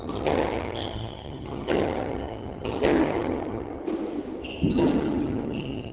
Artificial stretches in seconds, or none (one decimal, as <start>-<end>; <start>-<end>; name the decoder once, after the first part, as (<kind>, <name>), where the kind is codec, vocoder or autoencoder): 0.0-3.8 (vocoder, HiFi-GAN); 4.7-5.9